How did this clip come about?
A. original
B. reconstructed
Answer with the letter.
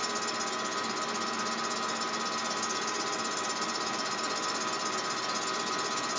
A